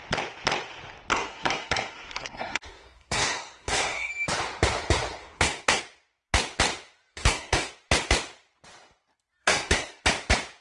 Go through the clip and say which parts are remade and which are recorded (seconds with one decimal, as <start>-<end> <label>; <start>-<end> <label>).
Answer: 0.0-1.1 recorded; 1.1-4.1 remade; 4.1-5.2 recorded; 5.2-5.8 remade; 5.8-7.1 recorded; 7.1-7.7 remade; 7.7-9.4 recorded; 9.4-10.0 remade; 10.0-10.6 recorded